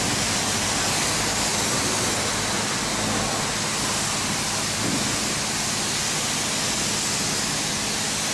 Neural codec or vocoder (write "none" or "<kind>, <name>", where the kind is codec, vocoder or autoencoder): none